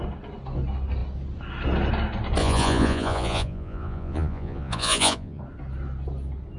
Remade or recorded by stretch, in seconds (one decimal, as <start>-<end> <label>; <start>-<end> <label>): 0.0-2.4 recorded; 2.4-5.4 remade; 5.4-6.6 recorded